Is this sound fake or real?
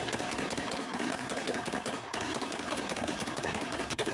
fake